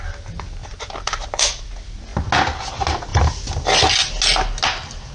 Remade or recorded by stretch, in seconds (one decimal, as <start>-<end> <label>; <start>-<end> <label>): 0.0-0.6 recorded; 0.6-1.5 remade; 1.5-3.1 recorded; 3.1-3.8 remade; 3.8-5.1 recorded